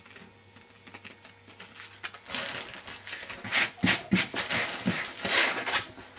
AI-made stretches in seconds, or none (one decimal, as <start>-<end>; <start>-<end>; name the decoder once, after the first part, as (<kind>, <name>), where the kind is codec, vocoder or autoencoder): none